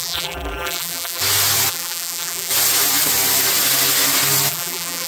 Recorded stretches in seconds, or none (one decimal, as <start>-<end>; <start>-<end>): 1.2-1.7; 2.5-4.5